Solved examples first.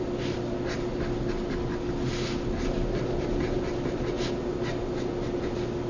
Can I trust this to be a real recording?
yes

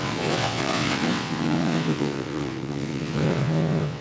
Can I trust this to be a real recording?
no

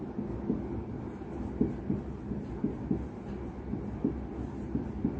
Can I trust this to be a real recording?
yes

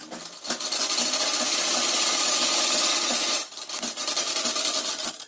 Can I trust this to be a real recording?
yes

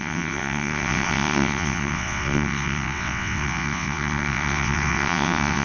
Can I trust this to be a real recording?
no